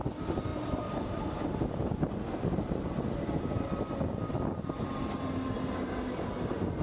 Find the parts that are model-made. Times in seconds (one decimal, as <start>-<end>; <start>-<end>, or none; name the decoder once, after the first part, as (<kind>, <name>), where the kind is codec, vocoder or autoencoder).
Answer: 0.5-1.6 (vocoder, BigVGAN v2)